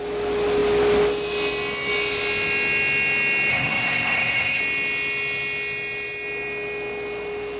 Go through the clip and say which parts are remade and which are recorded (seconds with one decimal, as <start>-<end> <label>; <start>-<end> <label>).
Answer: 0.0-3.5 recorded; 3.5-4.6 remade; 4.6-7.6 recorded